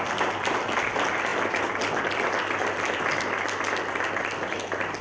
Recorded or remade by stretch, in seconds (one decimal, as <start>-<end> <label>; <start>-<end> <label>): 0.0-5.0 recorded